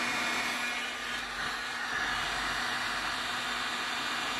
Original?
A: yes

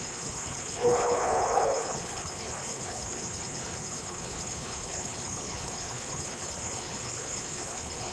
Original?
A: no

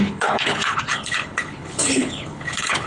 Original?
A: no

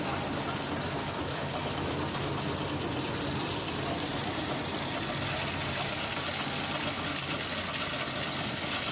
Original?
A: yes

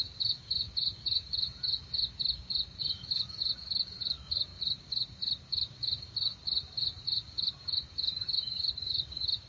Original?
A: no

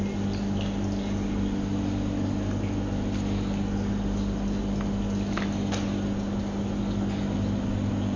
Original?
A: yes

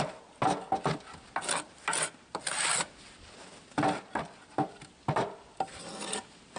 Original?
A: yes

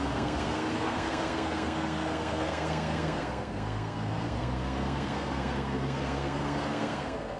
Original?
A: no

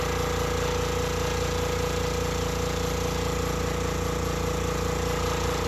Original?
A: yes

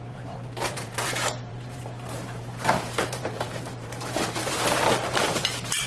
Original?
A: no